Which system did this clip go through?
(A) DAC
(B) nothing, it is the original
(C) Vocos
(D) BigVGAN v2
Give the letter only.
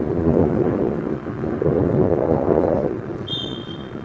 C